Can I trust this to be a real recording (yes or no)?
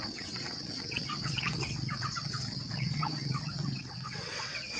no